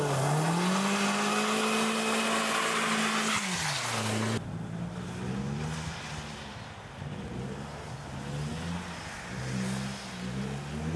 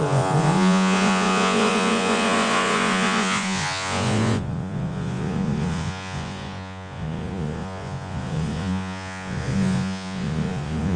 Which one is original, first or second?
first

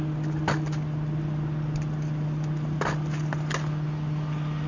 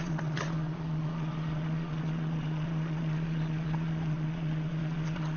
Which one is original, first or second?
first